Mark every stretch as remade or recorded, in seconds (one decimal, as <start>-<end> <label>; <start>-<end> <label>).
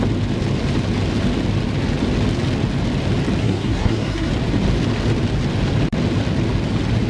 0.0-3.4 recorded; 3.4-4.3 remade; 4.3-7.1 recorded